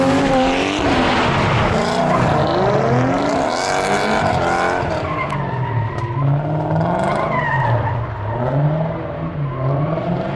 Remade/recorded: recorded